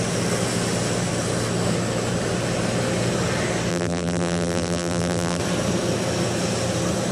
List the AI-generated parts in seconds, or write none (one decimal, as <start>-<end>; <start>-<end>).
3.7-5.4